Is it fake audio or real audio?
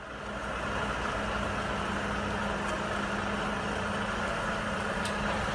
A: real